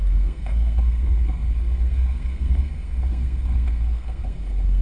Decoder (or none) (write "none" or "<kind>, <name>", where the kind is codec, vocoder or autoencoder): codec, SNAC